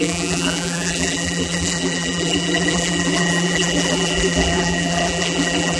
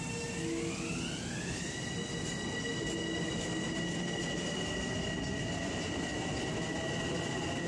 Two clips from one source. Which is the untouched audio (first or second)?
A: second